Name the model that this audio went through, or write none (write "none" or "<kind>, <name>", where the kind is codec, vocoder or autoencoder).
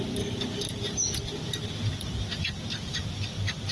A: none